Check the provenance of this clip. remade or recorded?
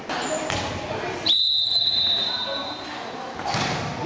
recorded